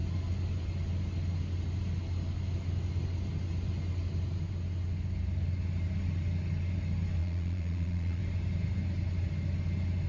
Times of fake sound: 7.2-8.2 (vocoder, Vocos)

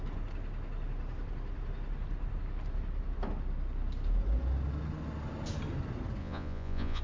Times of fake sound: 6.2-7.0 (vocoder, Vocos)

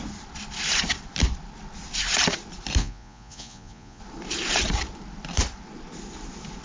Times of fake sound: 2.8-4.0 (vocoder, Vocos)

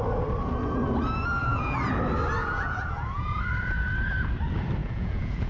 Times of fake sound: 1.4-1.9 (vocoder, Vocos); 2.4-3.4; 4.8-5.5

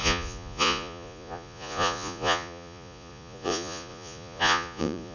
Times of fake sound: 0.0-5.1 (vocoder, Vocos)

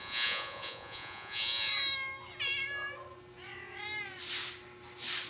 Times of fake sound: 0.0-1.7 (vocoder, Vocos)